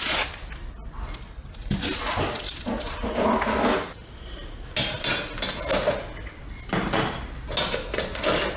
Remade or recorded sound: recorded